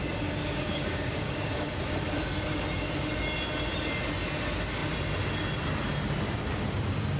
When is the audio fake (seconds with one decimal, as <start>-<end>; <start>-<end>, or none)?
0.4-1.9